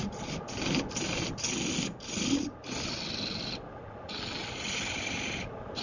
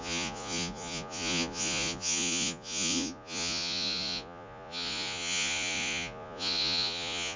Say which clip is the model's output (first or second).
second